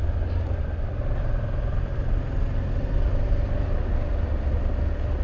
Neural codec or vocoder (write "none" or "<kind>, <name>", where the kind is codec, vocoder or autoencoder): none